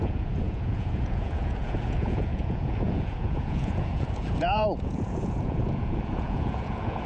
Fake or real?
fake